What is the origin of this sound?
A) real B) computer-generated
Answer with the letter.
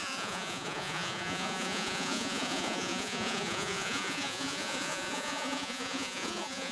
B